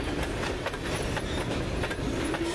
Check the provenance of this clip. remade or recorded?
recorded